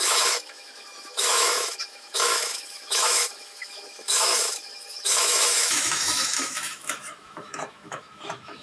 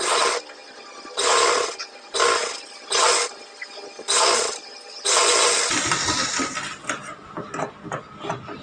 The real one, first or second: second